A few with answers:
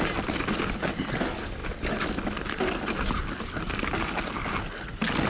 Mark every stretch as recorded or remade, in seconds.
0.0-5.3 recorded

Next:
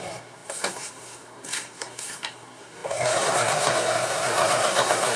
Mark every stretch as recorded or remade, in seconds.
0.0-5.2 remade

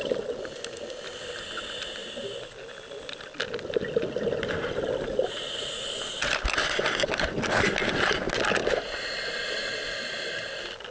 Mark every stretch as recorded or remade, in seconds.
0.0-10.9 recorded

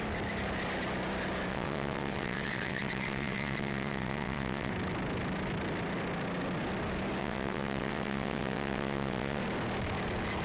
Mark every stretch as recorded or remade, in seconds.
0.0-1.5 recorded; 1.5-4.7 remade; 4.7-7.2 recorded; 7.2-9.4 remade; 9.4-10.4 recorded

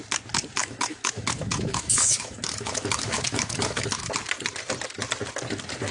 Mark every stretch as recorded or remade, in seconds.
0.0-0.6 recorded; 0.6-4.1 remade; 4.1-5.9 recorded